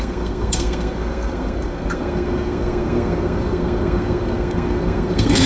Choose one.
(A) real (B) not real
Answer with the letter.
B